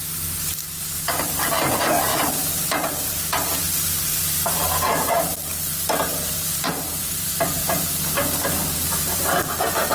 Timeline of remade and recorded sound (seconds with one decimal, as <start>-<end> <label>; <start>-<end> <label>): 0.0-6.1 recorded; 6.1-7.3 remade; 7.3-9.9 recorded